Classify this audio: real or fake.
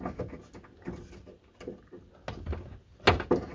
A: real